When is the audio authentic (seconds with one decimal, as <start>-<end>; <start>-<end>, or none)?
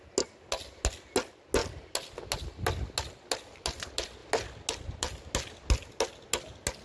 0.0-6.8